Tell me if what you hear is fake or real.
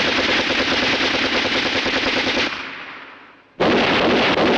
real